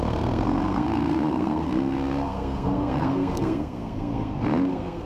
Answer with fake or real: fake